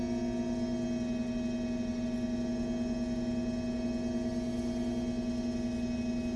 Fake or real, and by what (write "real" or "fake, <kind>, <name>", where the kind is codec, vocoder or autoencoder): real